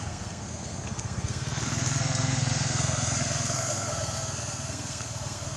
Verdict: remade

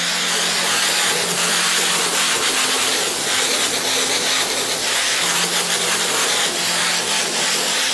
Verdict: recorded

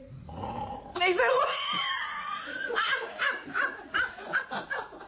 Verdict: remade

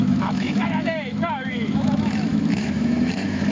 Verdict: remade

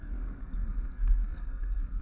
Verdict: remade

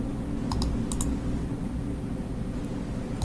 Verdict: recorded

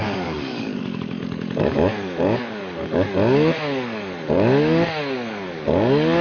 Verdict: remade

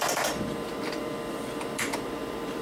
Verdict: remade